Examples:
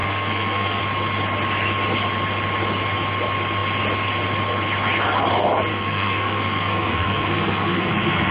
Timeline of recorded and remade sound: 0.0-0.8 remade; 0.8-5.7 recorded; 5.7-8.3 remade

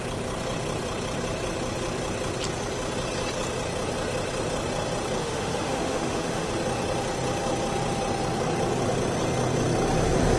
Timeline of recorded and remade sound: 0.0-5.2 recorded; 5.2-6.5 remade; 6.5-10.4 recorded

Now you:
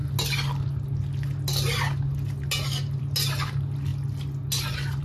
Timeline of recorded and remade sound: 0.0-5.0 recorded